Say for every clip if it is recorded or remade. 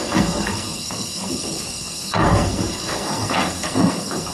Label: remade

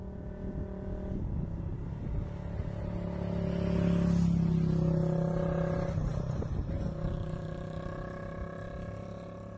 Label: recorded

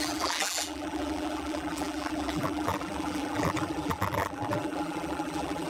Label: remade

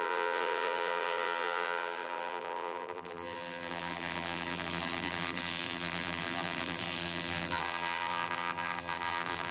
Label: remade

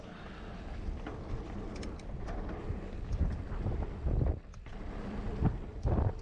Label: recorded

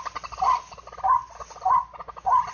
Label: recorded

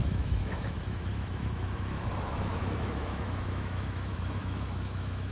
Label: remade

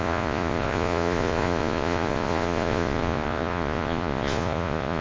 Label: remade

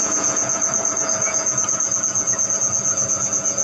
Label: remade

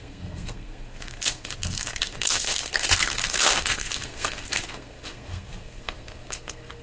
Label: remade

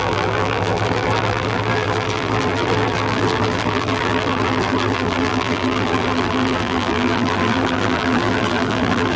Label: remade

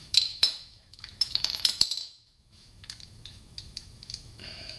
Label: remade